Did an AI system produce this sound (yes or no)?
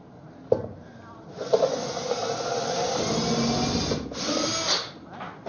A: no